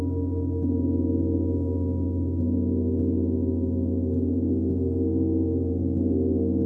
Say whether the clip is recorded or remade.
recorded